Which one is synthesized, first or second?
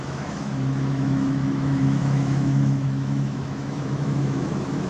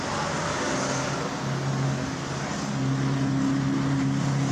first